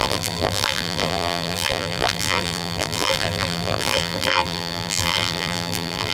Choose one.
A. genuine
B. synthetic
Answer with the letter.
B